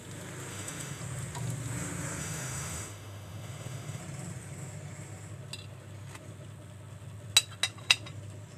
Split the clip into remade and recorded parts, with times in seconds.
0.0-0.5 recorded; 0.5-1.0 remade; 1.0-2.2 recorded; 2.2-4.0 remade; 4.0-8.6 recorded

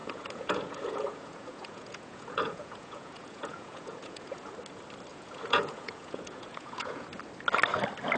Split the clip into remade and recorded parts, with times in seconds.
0.0-4.5 remade; 4.5-5.1 recorded; 5.1-7.2 remade; 7.2-8.2 recorded

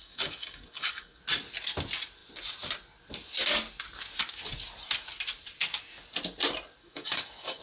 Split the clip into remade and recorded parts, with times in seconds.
0.0-1.2 remade; 1.2-6.8 recorded; 6.8-7.6 remade

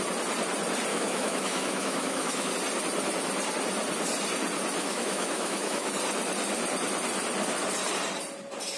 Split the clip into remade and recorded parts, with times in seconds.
0.0-0.9 recorded; 0.9-2.5 remade; 2.5-4.8 recorded; 4.8-5.9 remade; 5.9-8.8 recorded

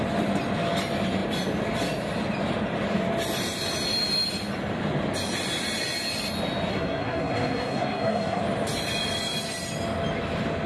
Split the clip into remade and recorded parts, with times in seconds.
0.0-6.7 recorded; 6.7-8.4 remade; 8.4-10.7 recorded